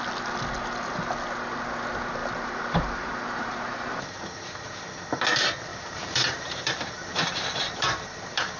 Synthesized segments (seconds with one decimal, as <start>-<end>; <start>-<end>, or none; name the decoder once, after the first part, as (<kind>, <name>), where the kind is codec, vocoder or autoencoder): 2.2-4.0 (vocoder, BigVGAN v2); 5.7-8.6